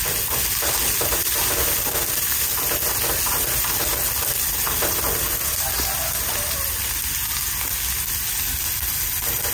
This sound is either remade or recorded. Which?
recorded